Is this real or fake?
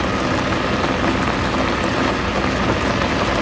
real